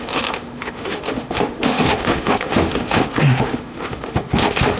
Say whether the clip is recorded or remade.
remade